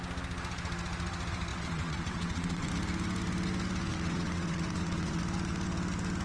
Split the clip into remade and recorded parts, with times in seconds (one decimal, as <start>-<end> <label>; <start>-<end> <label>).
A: 0.0-1.5 recorded; 1.5-2.7 remade; 2.7-3.9 recorded; 3.9-5.2 remade; 5.2-6.2 recorded